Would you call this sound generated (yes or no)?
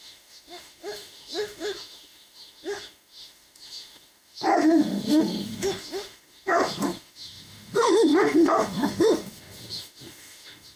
yes